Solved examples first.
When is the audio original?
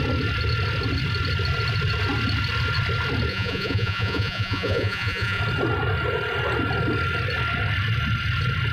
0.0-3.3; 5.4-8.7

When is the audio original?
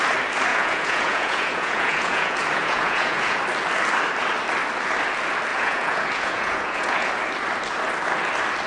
0.0-0.5; 3.4-5.5; 7.1-8.7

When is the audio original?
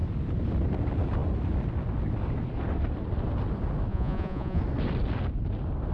0.0-3.9; 4.6-5.9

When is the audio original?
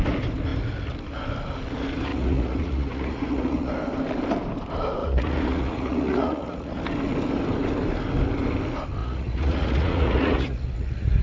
0.0-2.1; 3.7-5.0; 6.8-9.0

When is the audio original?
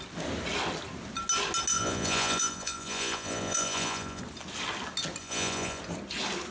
0.0-1.7; 4.2-5.2; 5.8-6.5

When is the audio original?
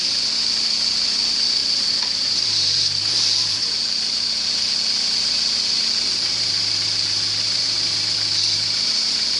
0.0-9.4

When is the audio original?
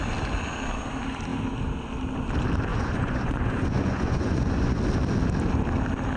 0.0-2.7; 4.8-6.2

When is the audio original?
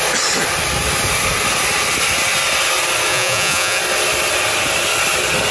0.0-3.1; 3.8-5.5